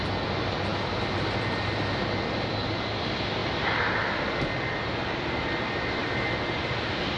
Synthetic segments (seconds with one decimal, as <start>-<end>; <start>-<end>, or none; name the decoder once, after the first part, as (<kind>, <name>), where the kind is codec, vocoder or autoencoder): 6.0-7.2 (vocoder, BigVGAN v2)